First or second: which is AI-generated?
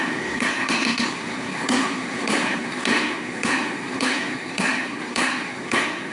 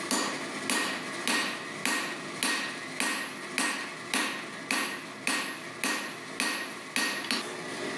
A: first